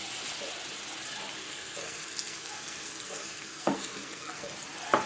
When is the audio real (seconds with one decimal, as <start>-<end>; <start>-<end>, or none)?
0.0-1.4; 4.5-5.1